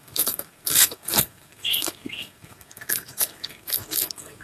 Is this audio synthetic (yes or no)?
yes